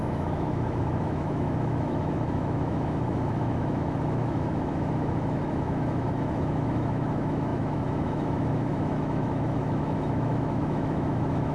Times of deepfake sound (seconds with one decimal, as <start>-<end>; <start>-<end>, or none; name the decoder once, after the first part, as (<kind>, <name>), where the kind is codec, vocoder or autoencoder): 0.0-11.5 (autoencoder, DAC-VAE)

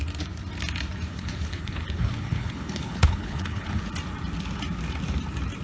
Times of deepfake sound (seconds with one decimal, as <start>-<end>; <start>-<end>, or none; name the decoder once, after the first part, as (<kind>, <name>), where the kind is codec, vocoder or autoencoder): 1.1-3.8 (codec, HILCodec)